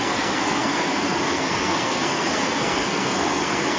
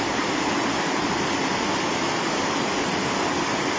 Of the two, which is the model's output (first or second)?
first